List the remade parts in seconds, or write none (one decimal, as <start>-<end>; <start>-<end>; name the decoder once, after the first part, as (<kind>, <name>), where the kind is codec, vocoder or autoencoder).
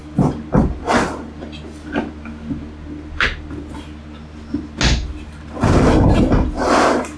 none